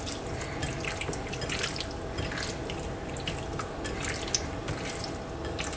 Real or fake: real